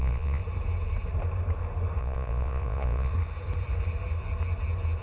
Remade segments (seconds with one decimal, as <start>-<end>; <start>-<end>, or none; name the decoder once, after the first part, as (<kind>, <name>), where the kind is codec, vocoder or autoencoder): 0.0-0.4 (vocoder, Vocos); 2.0-3.1